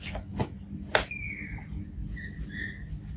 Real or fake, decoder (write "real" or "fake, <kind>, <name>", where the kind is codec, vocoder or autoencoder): real